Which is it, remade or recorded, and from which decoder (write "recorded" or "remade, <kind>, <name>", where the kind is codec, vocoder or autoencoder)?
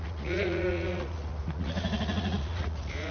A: remade, vocoder, Vocos